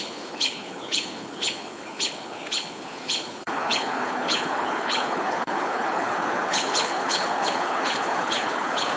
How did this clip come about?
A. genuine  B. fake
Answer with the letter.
B